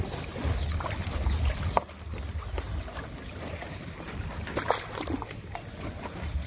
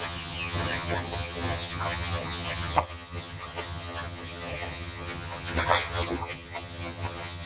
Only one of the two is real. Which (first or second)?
first